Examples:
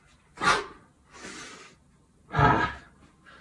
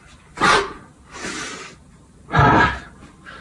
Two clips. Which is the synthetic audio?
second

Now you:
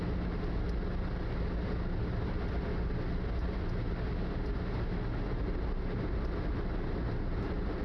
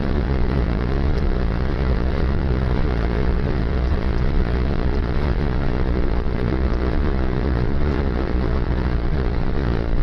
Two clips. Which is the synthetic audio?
second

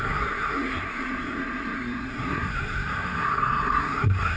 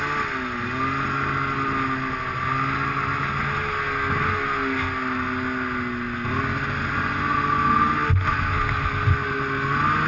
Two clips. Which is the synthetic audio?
first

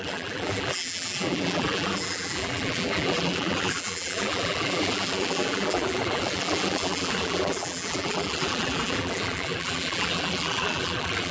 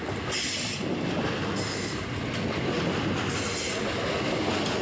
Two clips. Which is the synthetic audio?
first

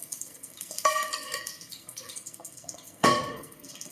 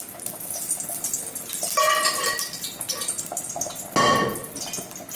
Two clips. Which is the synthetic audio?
first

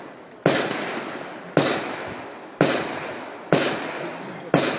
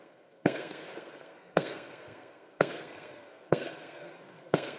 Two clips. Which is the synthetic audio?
second